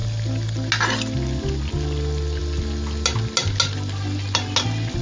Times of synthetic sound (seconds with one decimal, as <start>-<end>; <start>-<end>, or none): none